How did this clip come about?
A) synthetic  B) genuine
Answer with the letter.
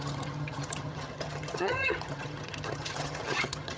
A